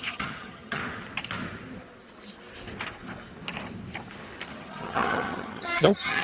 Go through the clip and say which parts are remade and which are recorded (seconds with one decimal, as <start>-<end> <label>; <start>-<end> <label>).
0.0-0.8 remade; 0.8-4.5 recorded; 4.5-6.2 remade